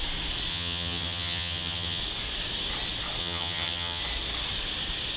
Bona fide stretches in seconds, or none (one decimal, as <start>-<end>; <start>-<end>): 0.0-0.5; 2.0-3.2; 4.0-5.2